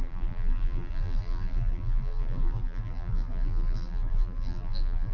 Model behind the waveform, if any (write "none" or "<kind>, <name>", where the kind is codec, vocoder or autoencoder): vocoder, BigVGAN v2